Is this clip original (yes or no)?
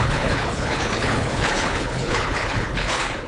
no